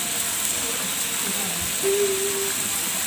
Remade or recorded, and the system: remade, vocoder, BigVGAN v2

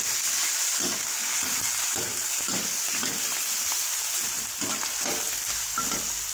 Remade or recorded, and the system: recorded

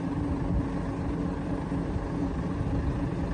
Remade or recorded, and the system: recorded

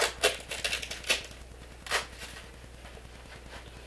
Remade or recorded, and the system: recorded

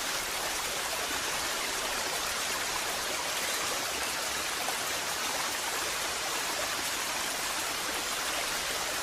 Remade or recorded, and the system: recorded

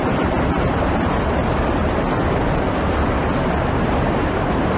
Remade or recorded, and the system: recorded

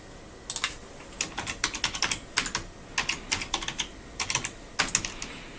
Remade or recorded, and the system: recorded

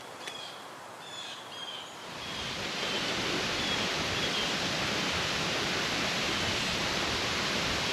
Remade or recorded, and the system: remade, vocoder, BigVGAN v2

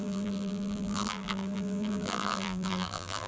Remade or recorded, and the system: remade, vocoder, BigVGAN v2